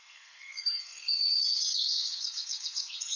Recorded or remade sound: remade